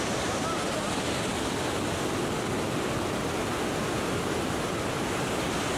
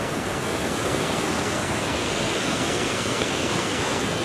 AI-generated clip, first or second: second